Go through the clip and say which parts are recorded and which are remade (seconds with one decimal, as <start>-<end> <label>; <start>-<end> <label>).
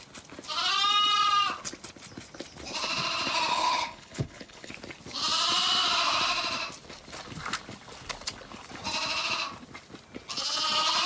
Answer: 0.0-3.5 recorded; 3.5-4.7 remade; 4.7-11.1 recorded